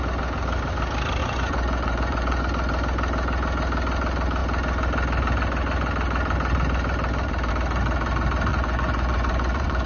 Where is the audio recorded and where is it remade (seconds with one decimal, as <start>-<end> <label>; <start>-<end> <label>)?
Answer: 0.0-1.2 recorded; 1.2-2.4 remade; 2.4-8.5 recorded; 8.5-9.9 remade